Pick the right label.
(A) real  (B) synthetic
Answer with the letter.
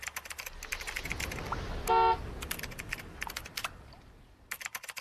A